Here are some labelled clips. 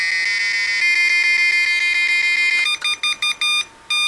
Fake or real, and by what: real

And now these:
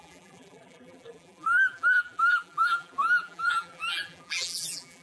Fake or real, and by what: fake, vocoder, BigVGAN v2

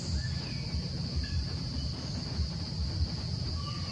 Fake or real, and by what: real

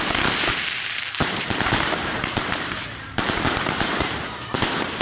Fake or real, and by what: fake, vocoder, BigVGAN v2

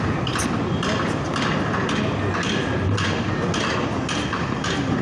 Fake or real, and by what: real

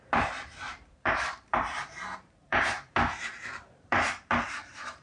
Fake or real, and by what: fake, vocoder, BigVGAN v2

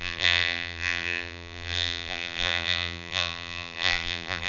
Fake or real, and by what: fake, vocoder, BigVGAN v2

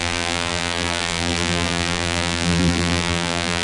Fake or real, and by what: fake, vocoder, BigVGAN v2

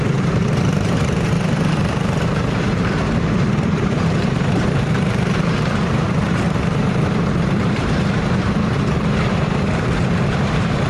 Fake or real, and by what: fake, vocoder, BigVGAN v2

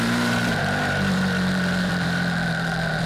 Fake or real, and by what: fake, vocoder, BigVGAN v2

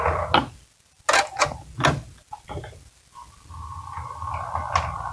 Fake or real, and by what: real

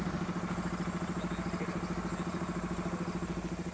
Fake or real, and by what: real